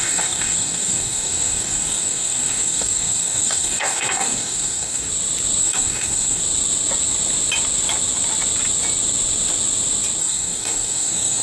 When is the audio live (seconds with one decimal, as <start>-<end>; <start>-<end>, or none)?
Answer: 5.1-5.6; 6.4-10.2